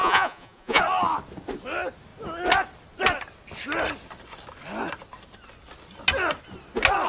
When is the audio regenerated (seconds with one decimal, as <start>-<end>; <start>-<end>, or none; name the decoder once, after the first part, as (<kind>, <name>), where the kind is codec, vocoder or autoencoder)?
0.0-0.8 (vocoder, Vocos)